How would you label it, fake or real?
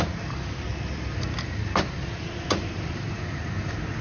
real